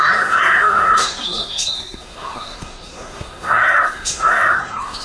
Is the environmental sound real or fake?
fake